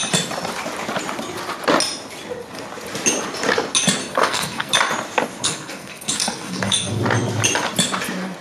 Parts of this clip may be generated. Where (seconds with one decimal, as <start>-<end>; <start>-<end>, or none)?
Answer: 4.0-4.7; 5.4-7.0